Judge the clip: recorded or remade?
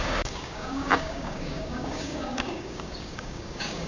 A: remade